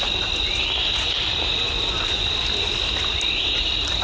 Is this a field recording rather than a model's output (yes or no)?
yes